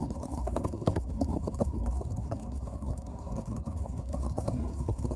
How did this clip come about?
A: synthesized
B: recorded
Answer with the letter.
A